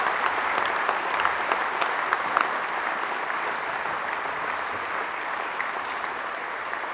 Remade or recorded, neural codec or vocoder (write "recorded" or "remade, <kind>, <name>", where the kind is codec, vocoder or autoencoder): recorded